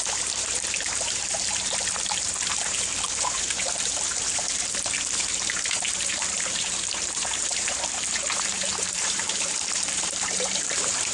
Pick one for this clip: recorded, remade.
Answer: remade